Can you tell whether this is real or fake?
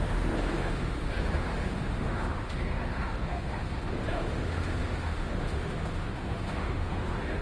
fake